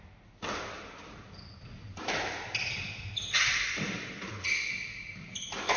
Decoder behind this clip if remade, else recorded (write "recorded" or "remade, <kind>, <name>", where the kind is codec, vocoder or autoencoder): recorded